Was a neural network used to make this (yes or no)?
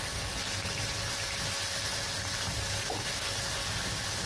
no